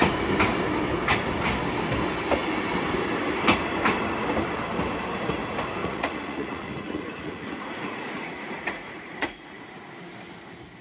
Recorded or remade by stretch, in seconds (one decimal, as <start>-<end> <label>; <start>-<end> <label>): 0.0-5.8 recorded; 5.8-9.9 remade; 9.9-10.8 recorded